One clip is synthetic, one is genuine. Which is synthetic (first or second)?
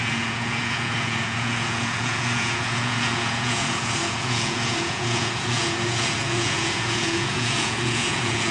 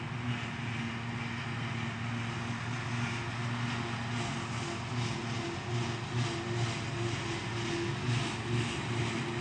first